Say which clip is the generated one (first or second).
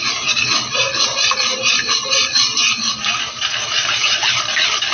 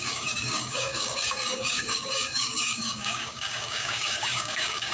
second